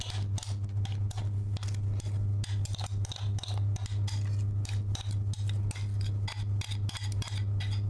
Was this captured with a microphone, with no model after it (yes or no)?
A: yes